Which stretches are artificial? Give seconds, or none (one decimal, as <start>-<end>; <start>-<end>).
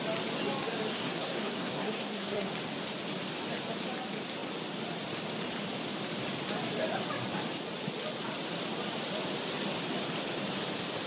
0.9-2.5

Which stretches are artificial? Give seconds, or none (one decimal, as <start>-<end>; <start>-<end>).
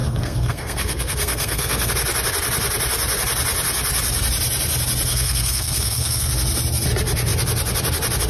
0.0-1.9; 5.1-6.3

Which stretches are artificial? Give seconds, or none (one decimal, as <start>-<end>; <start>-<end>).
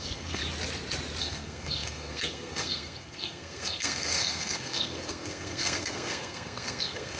0.0-0.4; 1.2-7.2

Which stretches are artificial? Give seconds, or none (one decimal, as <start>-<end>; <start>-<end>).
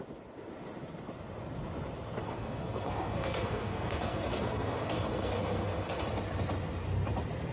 2.2-6.0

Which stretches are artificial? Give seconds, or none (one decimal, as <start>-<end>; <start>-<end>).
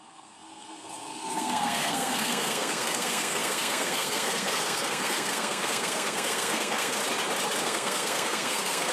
0.0-7.0; 7.6-8.9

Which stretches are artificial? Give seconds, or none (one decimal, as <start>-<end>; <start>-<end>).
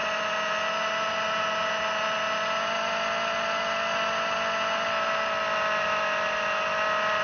none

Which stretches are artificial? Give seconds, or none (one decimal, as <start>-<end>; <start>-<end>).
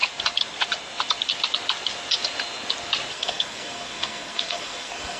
3.1-5.2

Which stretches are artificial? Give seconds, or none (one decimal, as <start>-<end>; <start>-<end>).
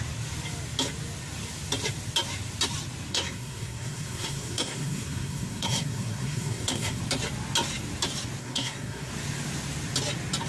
3.1-7.0; 8.4-9.1